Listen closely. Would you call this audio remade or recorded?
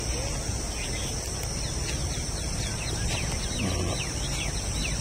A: recorded